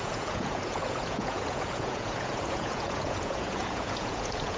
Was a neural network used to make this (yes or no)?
yes